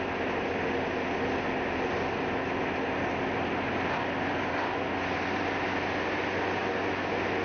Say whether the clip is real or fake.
real